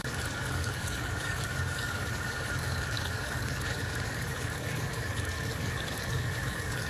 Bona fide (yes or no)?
no